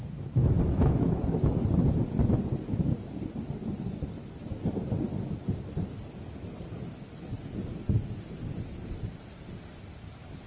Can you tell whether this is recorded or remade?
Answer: recorded